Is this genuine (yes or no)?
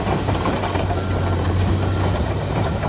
no